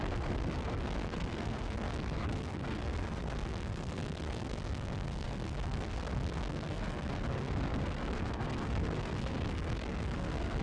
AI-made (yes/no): yes